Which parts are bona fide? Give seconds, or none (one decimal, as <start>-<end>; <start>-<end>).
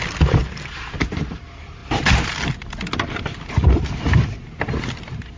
0.0-0.4; 1.1-5.4